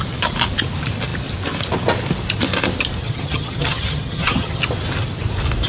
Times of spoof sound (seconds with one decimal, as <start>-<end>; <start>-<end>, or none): 3.0-4.6

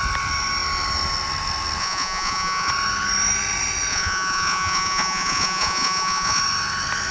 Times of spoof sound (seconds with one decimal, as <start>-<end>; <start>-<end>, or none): 1.8-2.7; 3.9-6.4

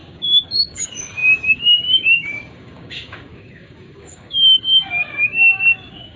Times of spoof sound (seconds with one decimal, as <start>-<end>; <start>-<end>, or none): 0.0-6.2

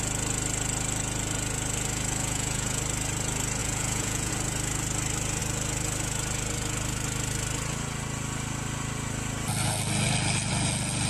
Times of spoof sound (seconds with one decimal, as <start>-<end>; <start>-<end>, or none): 2.2-2.8; 3.6-4.3

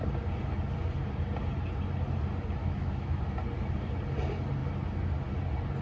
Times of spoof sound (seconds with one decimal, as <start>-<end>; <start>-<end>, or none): 2.6-3.2

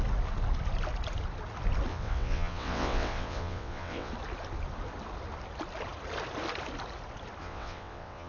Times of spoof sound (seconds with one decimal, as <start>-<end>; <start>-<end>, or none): 1.9-4.1; 7.4-8.3